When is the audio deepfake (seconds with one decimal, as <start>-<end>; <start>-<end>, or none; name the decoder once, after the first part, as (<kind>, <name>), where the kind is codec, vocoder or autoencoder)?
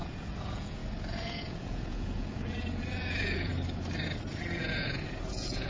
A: 0.0-0.8 (vocoder, Vocos); 1.4-3.5; 5.3-5.7